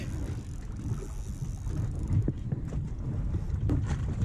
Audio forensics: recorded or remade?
recorded